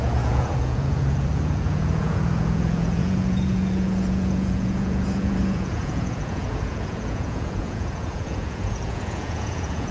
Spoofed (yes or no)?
yes